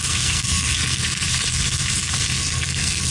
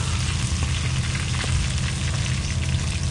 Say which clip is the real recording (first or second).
second